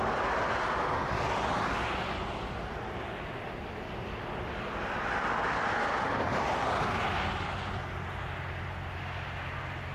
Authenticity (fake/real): real